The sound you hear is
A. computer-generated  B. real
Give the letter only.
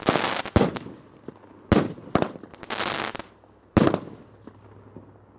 B